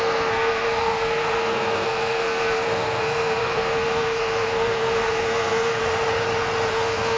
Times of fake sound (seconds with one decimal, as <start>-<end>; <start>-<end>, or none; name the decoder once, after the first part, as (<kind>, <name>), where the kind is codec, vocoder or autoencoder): 0.0-5.8 (codec, SNAC); 6.7-7.2